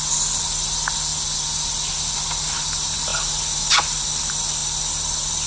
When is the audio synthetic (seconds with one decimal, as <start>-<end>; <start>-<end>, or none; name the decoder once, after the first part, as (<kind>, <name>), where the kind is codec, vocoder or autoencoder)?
none